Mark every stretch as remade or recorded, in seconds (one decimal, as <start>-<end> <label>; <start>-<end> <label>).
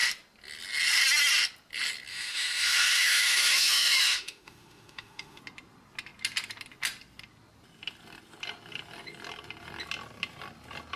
0.0-2.1 recorded; 2.1-5.4 remade; 5.4-11.0 recorded